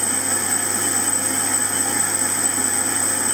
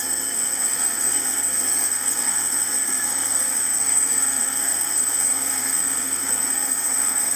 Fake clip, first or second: second